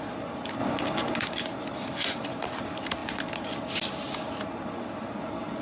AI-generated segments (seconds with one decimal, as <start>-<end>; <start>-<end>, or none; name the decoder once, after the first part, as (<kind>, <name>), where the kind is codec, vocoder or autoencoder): none

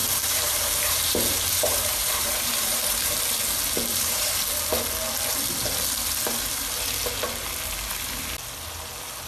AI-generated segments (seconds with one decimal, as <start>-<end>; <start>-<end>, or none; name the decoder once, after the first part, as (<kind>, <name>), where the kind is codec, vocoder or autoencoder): 0.0-3.2 (vocoder, BigVGAN v2); 3.9-4.4

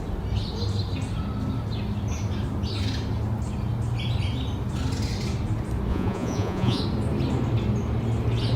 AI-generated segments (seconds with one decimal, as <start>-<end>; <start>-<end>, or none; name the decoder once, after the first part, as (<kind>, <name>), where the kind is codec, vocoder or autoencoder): 5.9-6.8 (vocoder, Vocos)

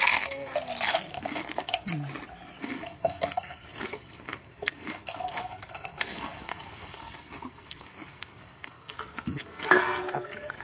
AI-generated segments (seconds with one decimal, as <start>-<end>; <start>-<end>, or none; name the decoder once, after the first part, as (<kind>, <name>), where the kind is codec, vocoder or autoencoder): 0.0-0.5 (codec, SNAC); 1.1-1.9; 2.6-10.6

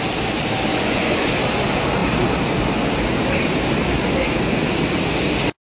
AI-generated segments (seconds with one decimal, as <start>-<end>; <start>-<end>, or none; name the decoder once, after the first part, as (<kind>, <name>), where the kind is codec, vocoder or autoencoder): 0.7-1.3 (vocoder, Vocos)

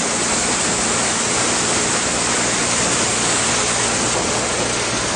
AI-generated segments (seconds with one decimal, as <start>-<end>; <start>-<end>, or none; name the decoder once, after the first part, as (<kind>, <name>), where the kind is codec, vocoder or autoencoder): 0.4-3.5 (vocoder, BigVGAN v2)

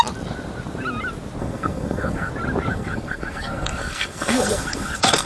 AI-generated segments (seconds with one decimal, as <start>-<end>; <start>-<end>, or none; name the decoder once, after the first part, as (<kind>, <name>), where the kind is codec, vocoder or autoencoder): 1.4-2.3 (codec, SNAC); 2.7-5.3

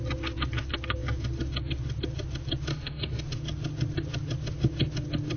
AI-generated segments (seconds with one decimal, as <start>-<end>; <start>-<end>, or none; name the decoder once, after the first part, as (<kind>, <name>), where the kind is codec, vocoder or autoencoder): 2.7-3.2 (autoencoder, DAC-VAE)